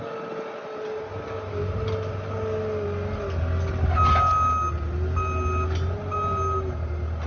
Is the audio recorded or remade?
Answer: recorded